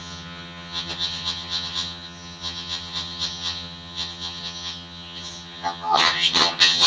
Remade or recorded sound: remade